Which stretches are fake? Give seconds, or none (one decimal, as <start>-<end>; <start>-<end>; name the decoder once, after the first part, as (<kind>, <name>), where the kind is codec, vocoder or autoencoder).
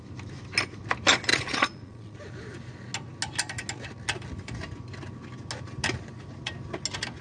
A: 1.3-2.2 (vocoder, Vocos)